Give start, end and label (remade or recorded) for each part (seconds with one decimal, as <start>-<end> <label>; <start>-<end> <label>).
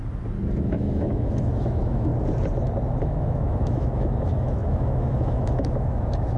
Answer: 0.0-0.6 recorded; 0.6-2.1 remade; 2.1-3.0 recorded; 3.0-6.4 remade